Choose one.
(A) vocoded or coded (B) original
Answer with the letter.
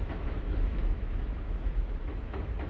A